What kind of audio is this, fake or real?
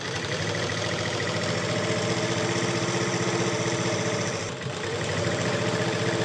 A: real